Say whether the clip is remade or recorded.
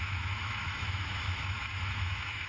remade